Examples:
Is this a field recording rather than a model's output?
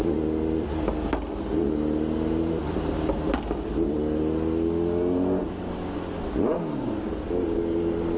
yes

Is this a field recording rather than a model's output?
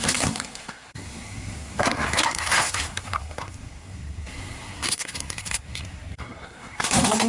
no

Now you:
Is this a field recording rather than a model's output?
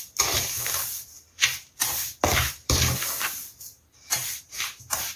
no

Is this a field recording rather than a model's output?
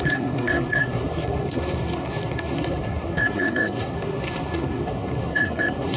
no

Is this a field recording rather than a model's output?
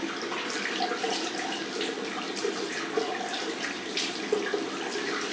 yes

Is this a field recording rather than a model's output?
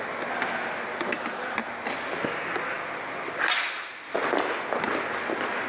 yes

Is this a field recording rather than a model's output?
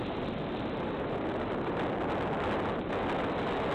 yes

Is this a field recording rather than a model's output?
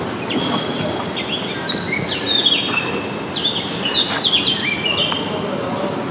yes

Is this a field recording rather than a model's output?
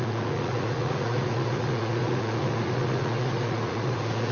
no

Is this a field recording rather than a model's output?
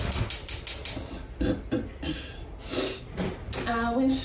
yes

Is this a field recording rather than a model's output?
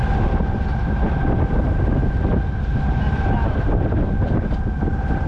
yes